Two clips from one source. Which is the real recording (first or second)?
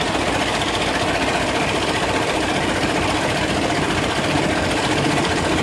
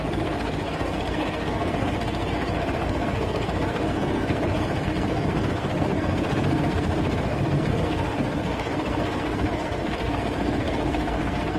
first